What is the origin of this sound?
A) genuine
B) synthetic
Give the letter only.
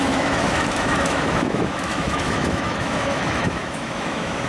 B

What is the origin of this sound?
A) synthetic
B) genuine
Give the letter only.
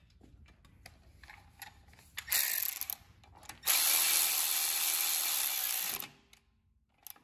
B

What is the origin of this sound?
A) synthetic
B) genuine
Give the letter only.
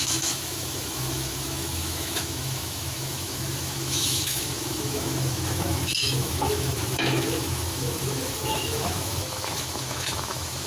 A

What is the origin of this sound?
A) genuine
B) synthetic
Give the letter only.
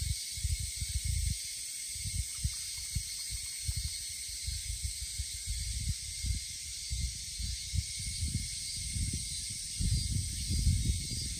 A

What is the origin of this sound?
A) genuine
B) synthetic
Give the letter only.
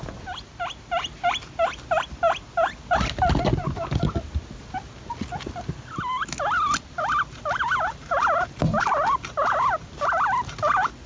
A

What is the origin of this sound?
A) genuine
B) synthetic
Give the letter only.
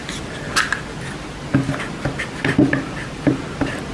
A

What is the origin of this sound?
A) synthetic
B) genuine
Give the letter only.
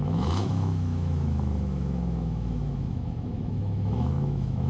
A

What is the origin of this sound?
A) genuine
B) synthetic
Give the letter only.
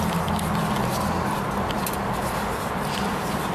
A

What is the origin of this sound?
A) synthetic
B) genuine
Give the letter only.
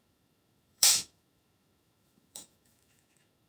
A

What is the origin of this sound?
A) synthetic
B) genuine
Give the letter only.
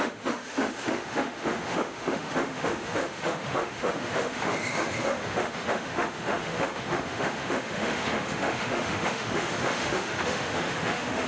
A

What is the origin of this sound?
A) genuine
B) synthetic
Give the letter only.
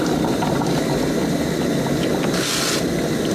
A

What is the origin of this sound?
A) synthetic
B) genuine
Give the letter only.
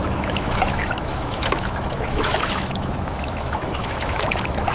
A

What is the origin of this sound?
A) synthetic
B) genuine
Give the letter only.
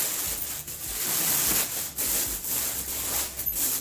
B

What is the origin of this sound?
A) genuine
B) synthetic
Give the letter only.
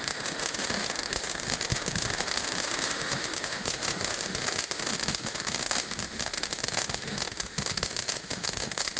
B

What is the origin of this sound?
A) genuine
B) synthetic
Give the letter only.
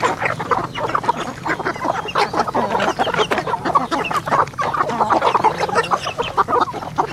A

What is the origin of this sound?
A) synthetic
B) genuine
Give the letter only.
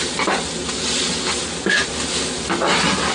B